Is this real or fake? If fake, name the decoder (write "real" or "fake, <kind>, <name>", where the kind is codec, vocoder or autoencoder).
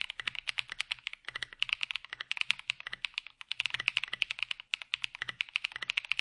real